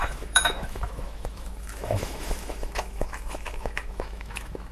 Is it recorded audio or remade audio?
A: remade